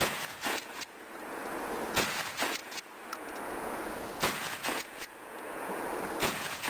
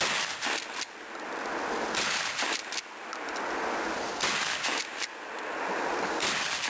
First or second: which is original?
second